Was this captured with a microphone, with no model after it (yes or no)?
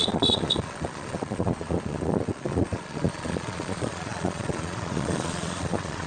no